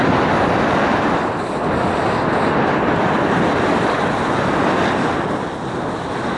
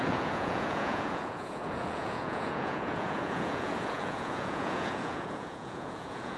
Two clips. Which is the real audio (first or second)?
first